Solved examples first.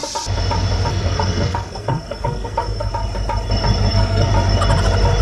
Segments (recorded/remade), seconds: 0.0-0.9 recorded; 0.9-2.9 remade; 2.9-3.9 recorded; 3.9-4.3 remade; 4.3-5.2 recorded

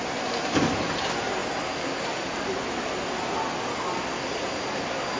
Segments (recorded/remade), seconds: 0.0-5.2 recorded

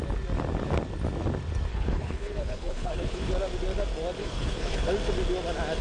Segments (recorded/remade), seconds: 0.0-1.7 recorded; 1.7-3.3 remade; 3.3-4.2 recorded; 4.2-4.9 remade; 4.9-5.8 recorded

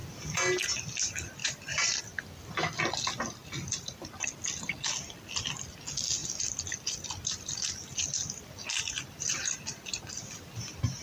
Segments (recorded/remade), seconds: 0.0-0.6 remade; 0.6-1.4 recorded; 1.4-2.0 remade; 2.0-3.4 recorded; 3.4-4.0 remade; 4.0-6.2 recorded; 6.2-11.0 remade

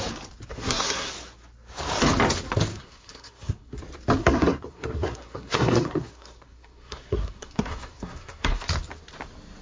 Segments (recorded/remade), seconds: 0.0-0.5 recorded; 0.5-1.1 remade; 1.1-2.7 recorded; 2.7-3.8 remade; 3.8-4.2 recorded; 4.2-8.6 remade; 8.6-9.6 recorded

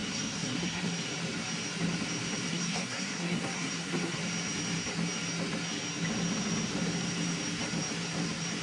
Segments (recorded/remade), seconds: 0.0-0.8 remade; 0.8-2.4 recorded; 2.4-4.2 remade; 4.2-8.6 recorded

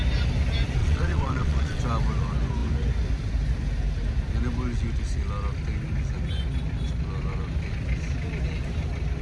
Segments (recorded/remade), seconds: 0.0-0.8 recorded; 0.8-1.8 remade; 1.8-9.2 recorded